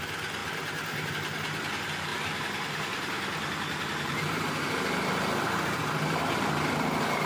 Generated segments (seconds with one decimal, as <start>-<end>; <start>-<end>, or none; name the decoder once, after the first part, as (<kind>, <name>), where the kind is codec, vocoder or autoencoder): 0.4-1.1 (vocoder, BigVGAN v2); 2.1-6.5